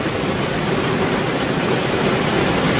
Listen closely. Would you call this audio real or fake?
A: real